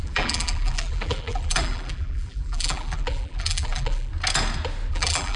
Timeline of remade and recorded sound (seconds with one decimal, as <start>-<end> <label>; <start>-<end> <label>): 0.0-4.1 remade; 4.1-4.9 recorded; 4.9-5.4 remade

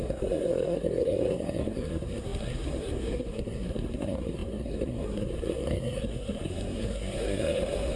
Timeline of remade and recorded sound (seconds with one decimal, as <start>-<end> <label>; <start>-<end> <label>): 0.0-8.0 remade

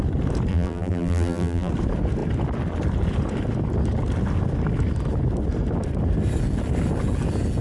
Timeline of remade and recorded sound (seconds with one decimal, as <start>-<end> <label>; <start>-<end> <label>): 0.0-0.5 recorded; 0.5-1.7 remade; 1.7-7.6 recorded

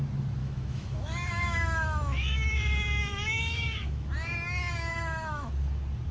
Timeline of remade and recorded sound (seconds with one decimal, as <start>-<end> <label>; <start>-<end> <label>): 0.0-0.4 recorded; 0.4-4.1 remade; 4.1-4.9 recorded; 4.9-5.5 remade; 5.5-6.1 recorded

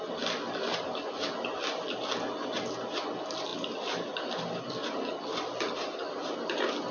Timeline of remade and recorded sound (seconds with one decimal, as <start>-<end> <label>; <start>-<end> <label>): 0.0-6.9 recorded

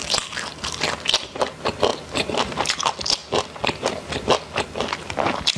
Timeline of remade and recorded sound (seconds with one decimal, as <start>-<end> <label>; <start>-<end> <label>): 0.0-5.6 recorded

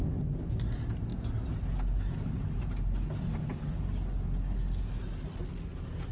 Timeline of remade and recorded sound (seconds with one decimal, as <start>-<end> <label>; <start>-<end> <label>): 0.0-6.1 recorded

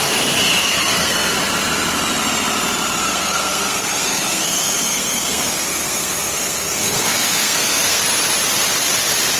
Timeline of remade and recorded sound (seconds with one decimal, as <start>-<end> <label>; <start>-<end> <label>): 0.0-0.6 recorded; 0.6-1.3 remade; 1.3-3.0 recorded; 3.0-8.0 remade; 8.0-9.4 recorded